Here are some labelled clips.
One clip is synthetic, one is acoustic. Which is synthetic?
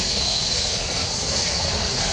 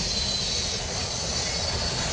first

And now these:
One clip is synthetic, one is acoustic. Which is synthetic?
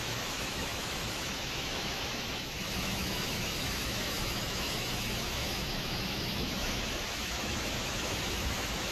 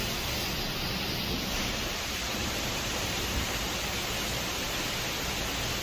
first